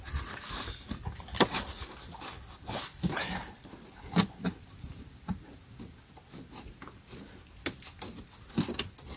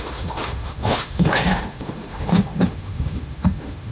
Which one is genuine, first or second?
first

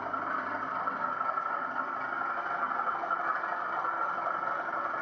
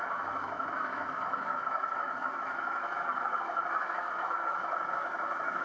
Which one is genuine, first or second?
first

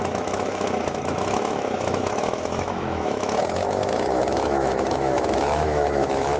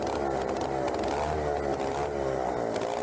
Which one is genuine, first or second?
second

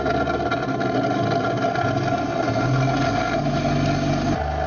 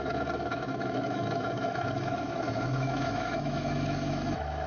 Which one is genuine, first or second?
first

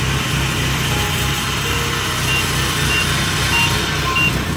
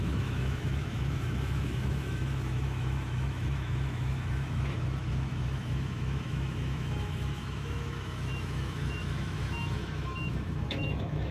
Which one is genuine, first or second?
first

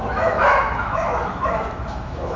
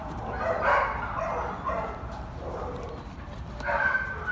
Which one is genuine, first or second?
second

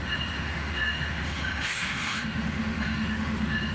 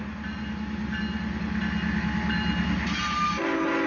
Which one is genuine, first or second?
second